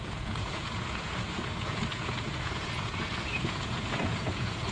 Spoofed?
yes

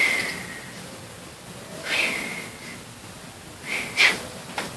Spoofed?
no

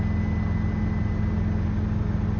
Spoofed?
no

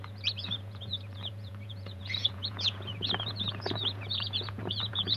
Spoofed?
yes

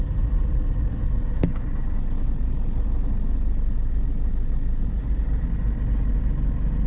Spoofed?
no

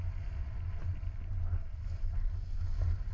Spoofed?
no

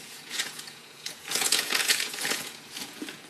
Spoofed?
yes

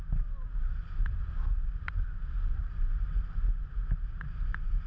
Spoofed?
no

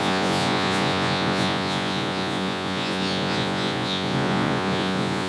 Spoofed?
yes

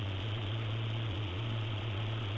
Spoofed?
yes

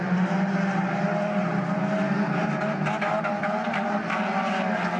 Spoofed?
no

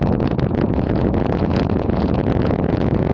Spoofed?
yes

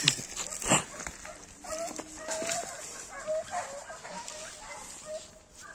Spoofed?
no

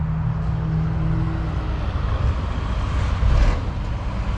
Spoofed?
no